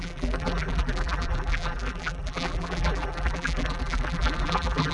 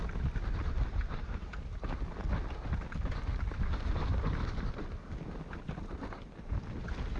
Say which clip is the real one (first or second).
second